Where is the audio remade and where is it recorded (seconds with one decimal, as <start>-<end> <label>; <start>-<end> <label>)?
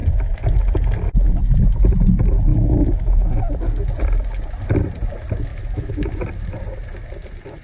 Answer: 0.0-2.5 recorded; 2.5-3.3 remade; 3.3-5.5 recorded; 5.5-6.2 remade; 6.2-7.6 recorded